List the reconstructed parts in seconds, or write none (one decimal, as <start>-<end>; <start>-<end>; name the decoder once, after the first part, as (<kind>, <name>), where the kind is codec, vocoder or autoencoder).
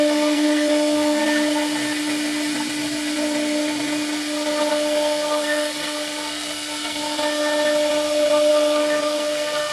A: 0.0-1.2 (codec, SNAC); 4.7-7.0; 8.5-9.7